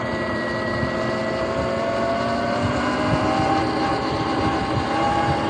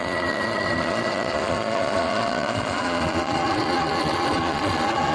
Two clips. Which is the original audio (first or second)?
first